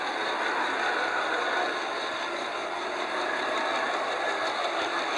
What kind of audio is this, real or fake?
real